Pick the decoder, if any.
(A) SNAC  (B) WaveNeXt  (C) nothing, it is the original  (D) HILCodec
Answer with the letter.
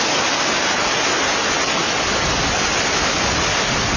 C